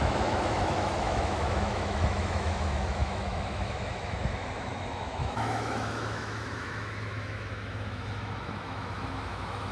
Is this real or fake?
fake